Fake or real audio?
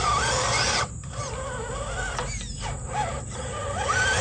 real